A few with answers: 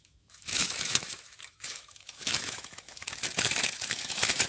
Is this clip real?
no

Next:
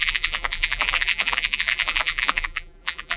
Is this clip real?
no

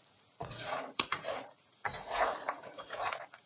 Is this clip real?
no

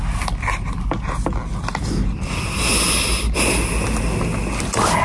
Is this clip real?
yes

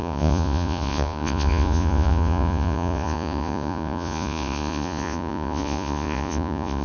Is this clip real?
no